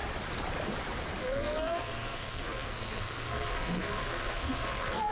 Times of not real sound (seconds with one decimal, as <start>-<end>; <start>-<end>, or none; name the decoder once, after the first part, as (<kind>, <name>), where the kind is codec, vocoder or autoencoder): 1.2-5.1 (codec, SNAC)